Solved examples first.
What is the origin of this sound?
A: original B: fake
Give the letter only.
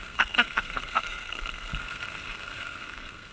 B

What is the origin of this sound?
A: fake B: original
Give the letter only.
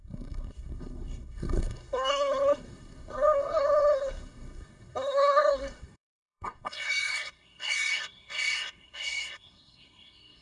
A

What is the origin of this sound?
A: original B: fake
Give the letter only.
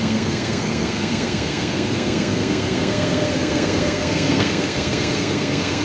B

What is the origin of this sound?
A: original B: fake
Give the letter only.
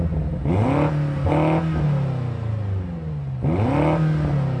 A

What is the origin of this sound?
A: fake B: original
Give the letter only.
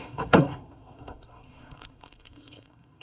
A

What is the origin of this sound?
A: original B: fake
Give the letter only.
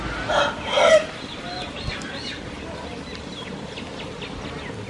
A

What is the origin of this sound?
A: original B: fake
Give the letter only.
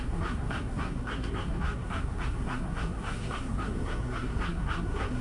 B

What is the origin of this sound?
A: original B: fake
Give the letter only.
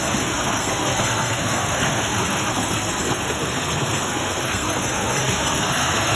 B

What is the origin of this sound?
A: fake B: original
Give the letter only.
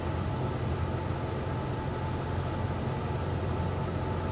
B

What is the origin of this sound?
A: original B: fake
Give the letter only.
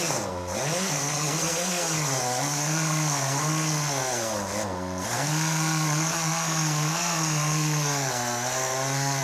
B